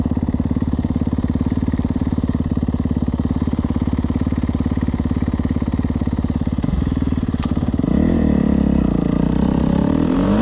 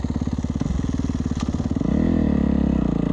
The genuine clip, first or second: second